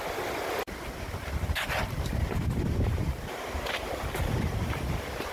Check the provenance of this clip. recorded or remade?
recorded